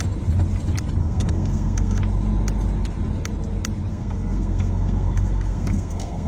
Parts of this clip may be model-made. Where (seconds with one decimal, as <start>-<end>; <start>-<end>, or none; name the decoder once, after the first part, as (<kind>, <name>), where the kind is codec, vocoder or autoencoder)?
1.0-2.0 (codec, SNAC); 3.9-6.3